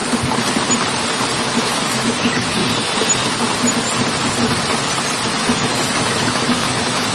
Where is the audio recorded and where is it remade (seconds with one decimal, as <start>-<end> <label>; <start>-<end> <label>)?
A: 0.0-1.4 recorded; 1.4-2.6 remade; 2.6-5.3 recorded; 5.3-7.1 remade